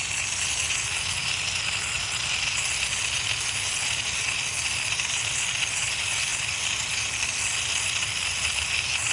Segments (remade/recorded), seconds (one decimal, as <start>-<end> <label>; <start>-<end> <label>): 0.0-9.1 recorded